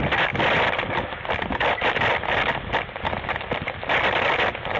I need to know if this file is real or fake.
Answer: real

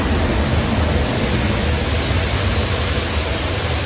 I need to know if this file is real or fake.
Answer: real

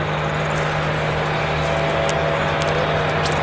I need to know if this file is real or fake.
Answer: real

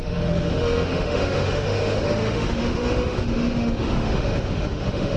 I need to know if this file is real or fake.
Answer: fake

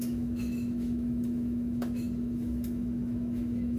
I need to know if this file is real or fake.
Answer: fake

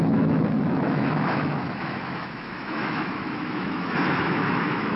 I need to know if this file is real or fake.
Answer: fake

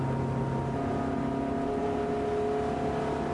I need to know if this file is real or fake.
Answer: real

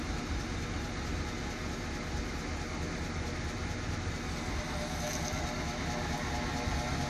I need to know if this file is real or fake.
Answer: real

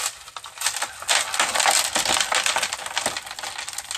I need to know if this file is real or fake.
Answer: real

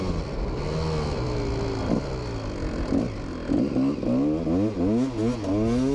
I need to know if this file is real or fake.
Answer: real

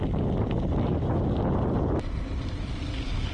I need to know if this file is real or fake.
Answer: real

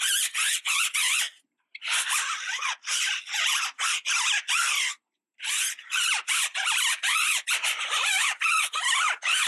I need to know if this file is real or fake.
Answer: real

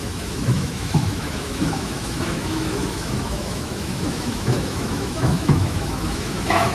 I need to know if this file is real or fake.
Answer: fake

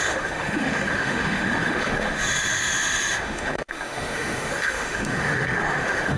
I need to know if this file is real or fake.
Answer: fake